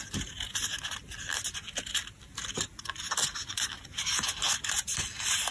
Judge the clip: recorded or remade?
recorded